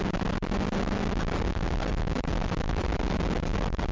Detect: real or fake real